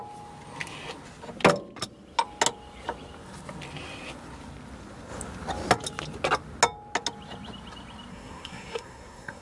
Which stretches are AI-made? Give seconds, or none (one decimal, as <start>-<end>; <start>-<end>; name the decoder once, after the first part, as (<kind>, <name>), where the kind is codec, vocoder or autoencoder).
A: 8.1-9.4 (codec, SNAC)